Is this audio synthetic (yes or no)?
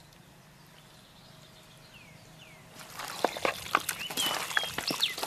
no